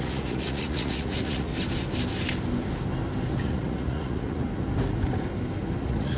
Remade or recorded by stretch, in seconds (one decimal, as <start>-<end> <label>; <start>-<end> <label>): 0.0-1.5 remade; 1.5-3.3 recorded; 3.3-4.5 remade; 4.5-5.8 recorded; 5.8-6.2 remade